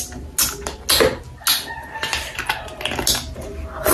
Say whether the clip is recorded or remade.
recorded